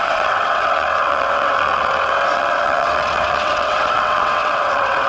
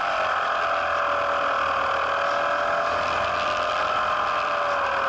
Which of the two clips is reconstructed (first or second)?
first